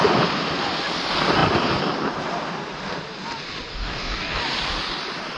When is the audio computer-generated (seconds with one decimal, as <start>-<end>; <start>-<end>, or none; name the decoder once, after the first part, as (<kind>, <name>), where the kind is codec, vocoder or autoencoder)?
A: 3.7-4.4 (codec, DAC)